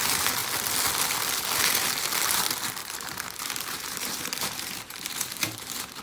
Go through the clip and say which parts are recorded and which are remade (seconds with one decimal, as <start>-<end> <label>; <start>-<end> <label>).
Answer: 0.0-2.8 recorded; 2.8-6.0 remade